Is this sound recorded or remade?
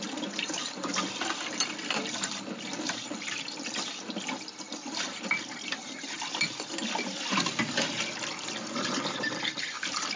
remade